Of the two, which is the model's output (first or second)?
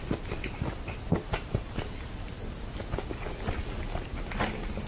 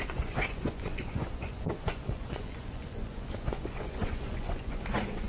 second